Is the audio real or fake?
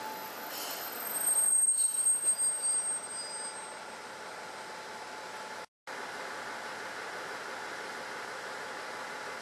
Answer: real